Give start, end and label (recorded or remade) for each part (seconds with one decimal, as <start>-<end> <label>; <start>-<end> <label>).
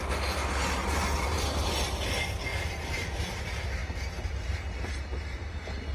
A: 0.0-0.8 recorded; 0.8-1.7 remade; 1.7-2.5 recorded; 2.5-3.4 remade; 3.4-5.9 recorded